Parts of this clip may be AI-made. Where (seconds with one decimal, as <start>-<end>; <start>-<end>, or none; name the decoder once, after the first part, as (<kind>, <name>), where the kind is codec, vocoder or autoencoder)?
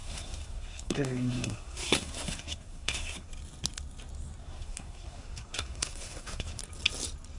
0.0-3.3 (codec, SNAC); 4.4-6.6